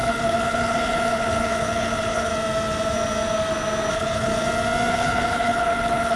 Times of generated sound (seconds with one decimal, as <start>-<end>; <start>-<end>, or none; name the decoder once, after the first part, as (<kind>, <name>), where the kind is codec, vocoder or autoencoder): 0.0-2.3 (codec, HILCodec); 3.9-4.3; 4.9-6.2